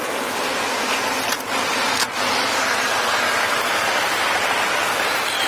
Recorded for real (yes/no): yes